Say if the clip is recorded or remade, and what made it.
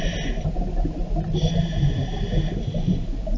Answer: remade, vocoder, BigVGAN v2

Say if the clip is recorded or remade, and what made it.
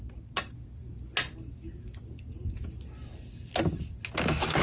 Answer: recorded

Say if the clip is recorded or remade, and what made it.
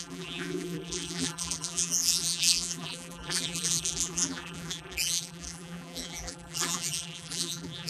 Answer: remade, vocoder, BigVGAN v2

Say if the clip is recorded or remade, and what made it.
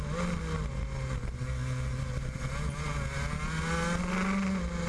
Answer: recorded